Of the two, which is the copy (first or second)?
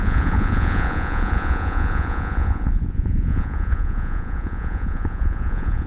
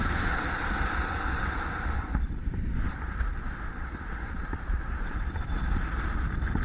first